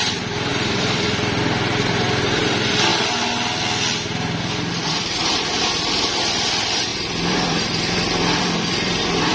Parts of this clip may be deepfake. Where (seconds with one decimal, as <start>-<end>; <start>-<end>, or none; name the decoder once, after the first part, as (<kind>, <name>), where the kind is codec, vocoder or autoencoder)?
0.0-2.9 (vocoder, BigVGAN v2); 4.7-9.3